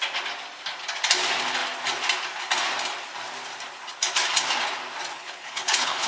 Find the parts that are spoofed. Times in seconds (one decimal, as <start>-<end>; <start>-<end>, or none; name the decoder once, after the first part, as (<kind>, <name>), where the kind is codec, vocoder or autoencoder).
5.1-6.1 (codec, HILCodec)